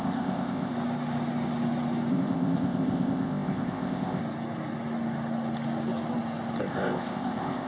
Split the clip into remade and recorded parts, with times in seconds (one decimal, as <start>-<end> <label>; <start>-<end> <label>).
0.0-0.7 remade; 0.7-2.1 recorded; 2.1-4.2 remade; 4.2-6.6 recorded; 6.6-7.7 remade